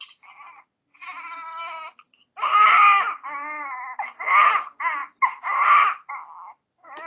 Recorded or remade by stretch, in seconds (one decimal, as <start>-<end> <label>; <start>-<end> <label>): 0.0-7.1 recorded